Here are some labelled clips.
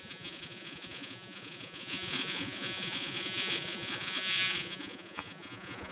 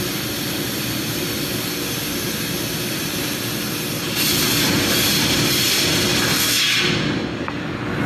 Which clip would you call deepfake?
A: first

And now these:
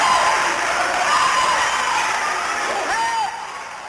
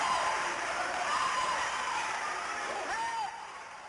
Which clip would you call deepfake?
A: second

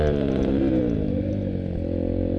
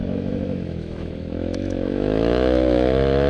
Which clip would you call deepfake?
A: second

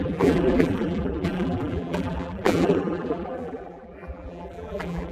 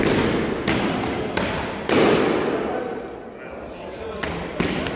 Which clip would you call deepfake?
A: first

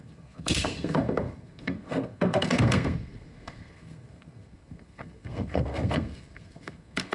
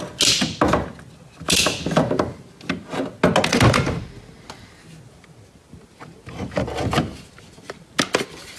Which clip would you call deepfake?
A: first